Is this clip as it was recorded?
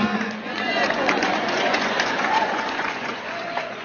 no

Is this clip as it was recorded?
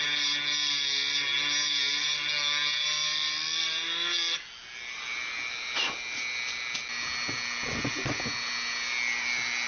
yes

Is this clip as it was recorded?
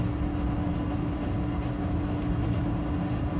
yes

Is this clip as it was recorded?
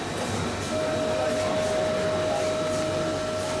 yes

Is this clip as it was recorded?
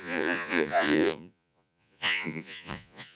no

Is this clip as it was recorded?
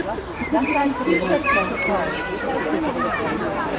no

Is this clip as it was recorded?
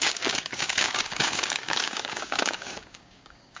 no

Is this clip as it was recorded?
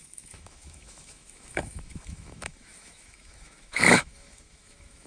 no